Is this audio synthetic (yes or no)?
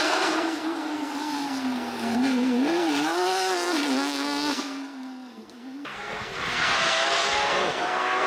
yes